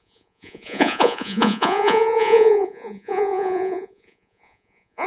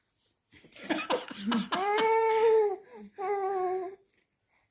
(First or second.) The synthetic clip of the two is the first